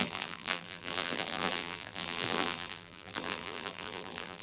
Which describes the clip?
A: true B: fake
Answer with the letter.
B